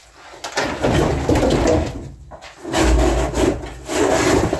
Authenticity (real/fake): real